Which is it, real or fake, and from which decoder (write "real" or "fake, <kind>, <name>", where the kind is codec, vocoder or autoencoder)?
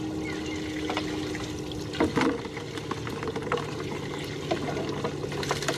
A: real